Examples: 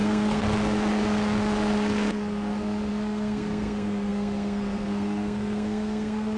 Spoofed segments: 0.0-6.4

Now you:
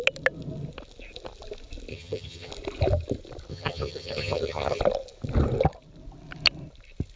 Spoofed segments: 1.9-2.5; 3.5-4.8

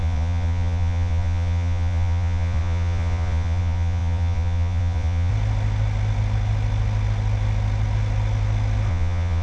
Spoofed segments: 0.0-5.3; 8.9-9.4

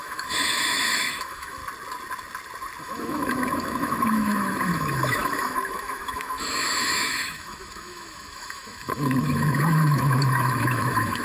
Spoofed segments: 0.0-1.6; 2.8-11.2

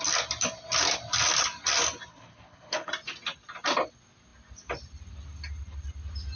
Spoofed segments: 2.1-2.9

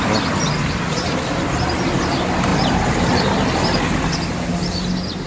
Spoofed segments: none

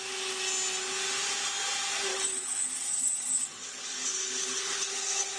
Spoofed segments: 2.1-5.4

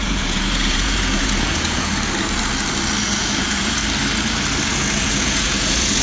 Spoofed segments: 0.0-1.9; 3.0-3.8; 4.7-6.0